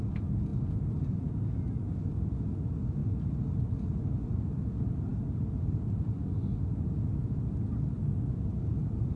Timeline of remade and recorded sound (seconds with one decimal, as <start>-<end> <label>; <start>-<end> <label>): 0.0-9.2 recorded